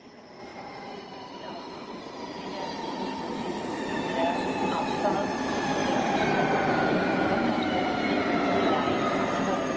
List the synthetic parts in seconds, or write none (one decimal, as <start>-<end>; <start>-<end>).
0.5-2.1; 3.4-4.0